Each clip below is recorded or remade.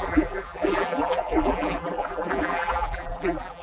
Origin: remade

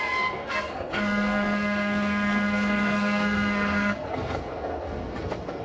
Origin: remade